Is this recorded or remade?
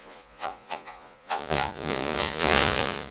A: remade